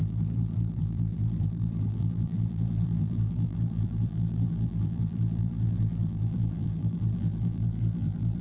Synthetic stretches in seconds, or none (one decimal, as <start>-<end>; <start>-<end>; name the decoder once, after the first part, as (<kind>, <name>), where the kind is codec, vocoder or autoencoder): 0.0-8.4 (vocoder, BigVGAN v2)